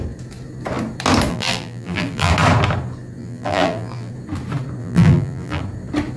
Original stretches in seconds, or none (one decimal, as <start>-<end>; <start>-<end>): 0.0-1.3; 2.3-3.2; 4.1-4.8; 5.6-6.2